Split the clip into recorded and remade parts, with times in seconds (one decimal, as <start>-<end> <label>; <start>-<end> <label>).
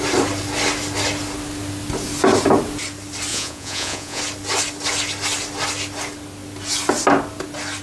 0.0-3.3 recorded; 3.3-4.2 remade; 4.2-7.8 recorded